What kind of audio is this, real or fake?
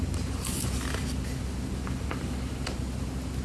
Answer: real